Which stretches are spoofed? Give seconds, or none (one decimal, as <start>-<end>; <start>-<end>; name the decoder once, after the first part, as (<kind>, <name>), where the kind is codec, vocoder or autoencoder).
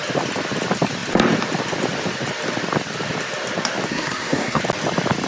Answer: 3.9-4.6 (codec, SNAC)